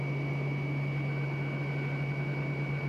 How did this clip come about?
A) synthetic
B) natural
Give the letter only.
B